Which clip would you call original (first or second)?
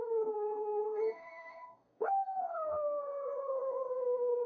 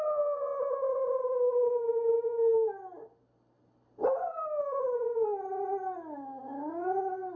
second